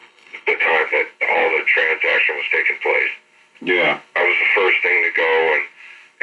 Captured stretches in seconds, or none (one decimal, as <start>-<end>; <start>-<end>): 0.7-6.2